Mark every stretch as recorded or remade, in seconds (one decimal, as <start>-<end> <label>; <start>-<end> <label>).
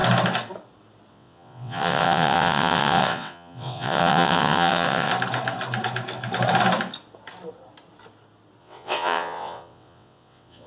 0.0-1.1 recorded; 1.1-5.1 remade; 5.1-8.6 recorded; 8.6-10.7 remade